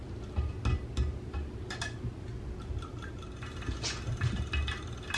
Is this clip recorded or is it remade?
recorded